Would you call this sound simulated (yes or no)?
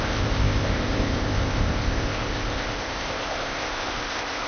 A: yes